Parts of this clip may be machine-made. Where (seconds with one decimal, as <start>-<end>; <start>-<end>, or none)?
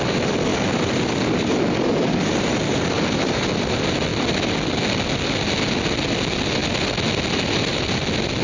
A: none